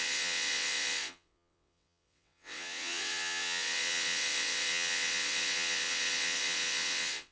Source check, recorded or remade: remade